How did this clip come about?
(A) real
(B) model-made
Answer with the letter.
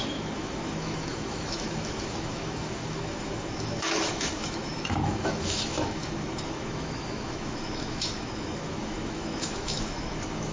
B